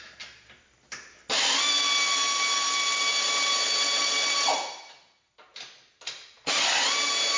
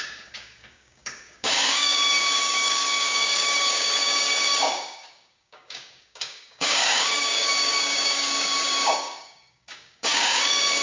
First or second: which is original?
first